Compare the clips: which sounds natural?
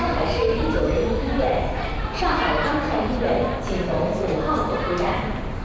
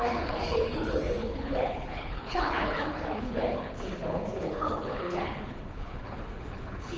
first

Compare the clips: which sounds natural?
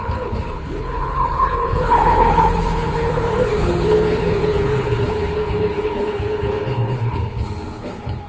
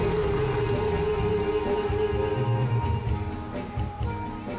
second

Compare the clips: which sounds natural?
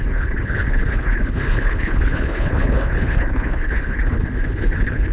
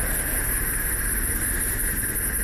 second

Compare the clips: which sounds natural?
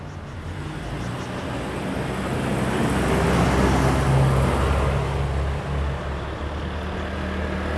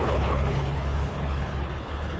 first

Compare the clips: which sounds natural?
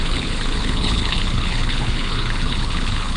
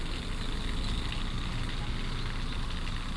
second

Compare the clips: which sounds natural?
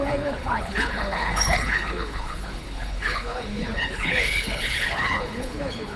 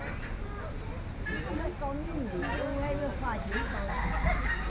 second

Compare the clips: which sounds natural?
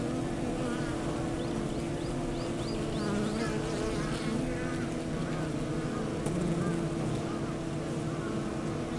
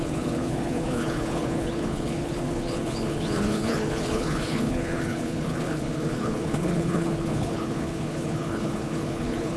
first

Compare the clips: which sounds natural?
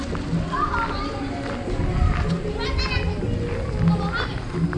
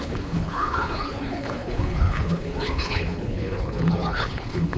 first